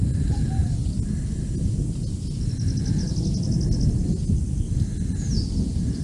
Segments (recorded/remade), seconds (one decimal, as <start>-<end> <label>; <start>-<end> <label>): 0.0-6.0 recorded